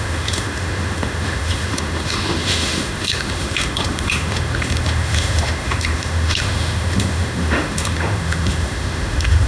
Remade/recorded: remade